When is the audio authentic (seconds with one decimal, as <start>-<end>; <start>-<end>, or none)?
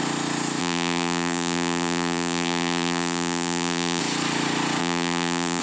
0.0-0.6; 4.0-4.8